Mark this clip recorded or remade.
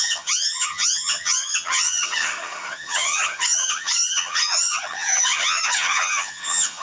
remade